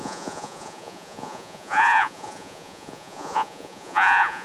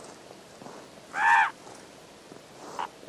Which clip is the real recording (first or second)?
second